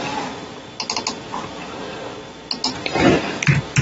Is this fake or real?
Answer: real